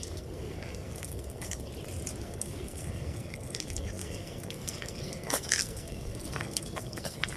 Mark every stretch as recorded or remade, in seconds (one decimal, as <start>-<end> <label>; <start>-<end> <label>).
0.0-1.7 remade; 1.7-2.2 recorded; 2.2-7.4 remade